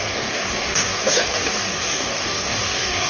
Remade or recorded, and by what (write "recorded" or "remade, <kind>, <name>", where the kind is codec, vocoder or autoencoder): remade, codec, DAC